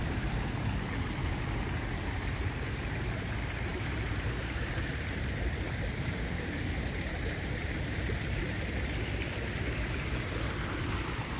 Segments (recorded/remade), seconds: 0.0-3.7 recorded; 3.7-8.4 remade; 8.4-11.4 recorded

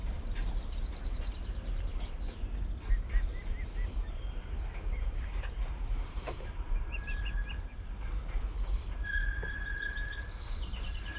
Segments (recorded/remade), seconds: 0.0-1.3 remade; 1.3-3.3 recorded; 3.3-8.1 remade; 8.1-11.2 recorded

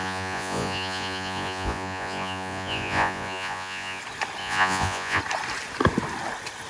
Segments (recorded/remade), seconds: 0.0-4.0 remade; 4.0-4.4 recorded; 4.4-5.2 remade; 5.2-6.7 recorded